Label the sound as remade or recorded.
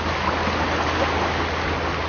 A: recorded